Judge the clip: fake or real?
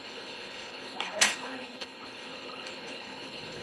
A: fake